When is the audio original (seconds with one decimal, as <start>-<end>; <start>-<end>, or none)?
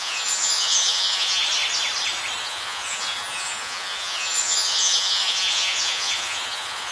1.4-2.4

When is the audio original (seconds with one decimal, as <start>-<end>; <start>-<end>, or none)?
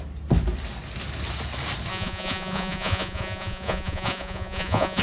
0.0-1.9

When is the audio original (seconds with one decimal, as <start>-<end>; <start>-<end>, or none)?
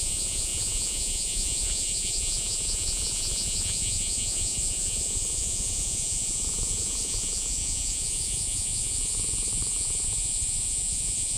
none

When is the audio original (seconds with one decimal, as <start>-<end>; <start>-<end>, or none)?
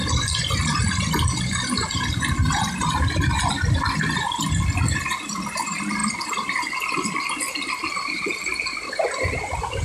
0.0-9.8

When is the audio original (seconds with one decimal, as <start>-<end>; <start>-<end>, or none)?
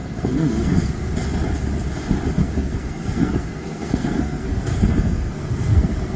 1.1-2.4